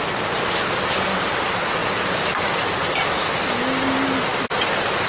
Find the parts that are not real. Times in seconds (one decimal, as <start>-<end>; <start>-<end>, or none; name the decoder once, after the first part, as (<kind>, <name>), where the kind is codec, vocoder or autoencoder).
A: none